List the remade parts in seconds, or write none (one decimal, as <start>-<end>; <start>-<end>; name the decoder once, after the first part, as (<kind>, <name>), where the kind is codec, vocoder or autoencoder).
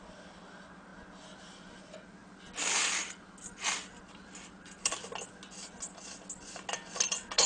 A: none